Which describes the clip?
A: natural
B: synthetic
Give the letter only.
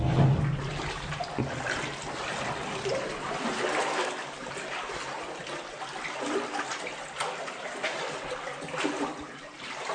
A